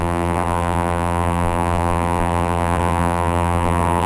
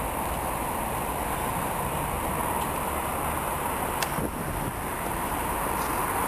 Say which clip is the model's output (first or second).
first